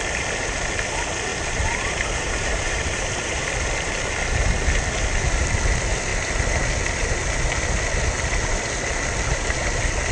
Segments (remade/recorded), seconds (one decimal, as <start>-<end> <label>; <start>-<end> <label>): 0.0-1.3 recorded; 1.3-3.4 remade; 3.4-10.1 recorded